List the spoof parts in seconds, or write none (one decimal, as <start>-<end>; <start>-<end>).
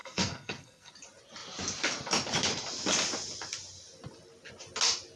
0.0-0.9